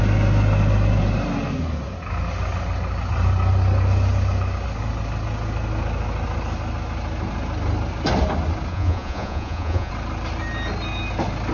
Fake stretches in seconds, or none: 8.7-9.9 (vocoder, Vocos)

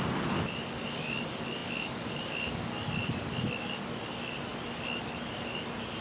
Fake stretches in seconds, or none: none

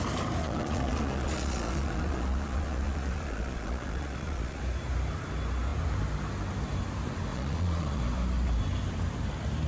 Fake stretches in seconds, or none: 0.4-4.6 (vocoder, Vocos); 7.3-8.0

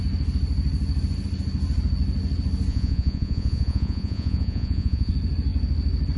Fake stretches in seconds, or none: 2.7-5.1 (vocoder, Vocos)

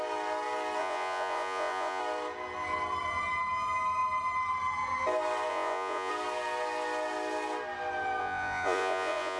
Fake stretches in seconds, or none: 0.8-2.0 (vocoder, Vocos); 5.5-6.1; 8.2-9.4

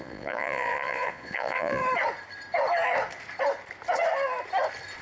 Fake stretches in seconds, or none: 0.0-1.8 (vocoder, Vocos)

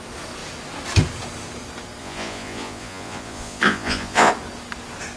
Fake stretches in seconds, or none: 2.0-4.3 (vocoder, Vocos)

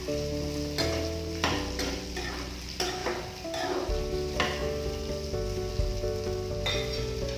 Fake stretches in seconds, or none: none